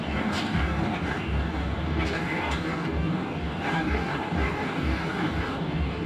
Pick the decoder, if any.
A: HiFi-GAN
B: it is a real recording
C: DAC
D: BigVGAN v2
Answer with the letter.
C